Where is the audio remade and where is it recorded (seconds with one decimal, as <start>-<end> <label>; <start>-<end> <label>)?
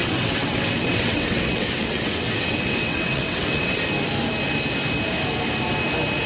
0.0-3.8 remade; 3.8-6.3 recorded